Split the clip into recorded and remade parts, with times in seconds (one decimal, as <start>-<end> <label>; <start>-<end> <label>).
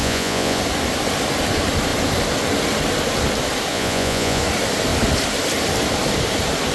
0.0-0.6 remade; 0.6-3.7 recorded; 3.7-4.4 remade; 4.4-6.7 recorded